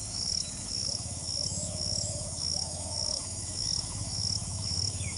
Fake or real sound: fake